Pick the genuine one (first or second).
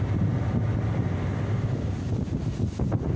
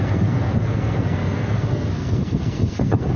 first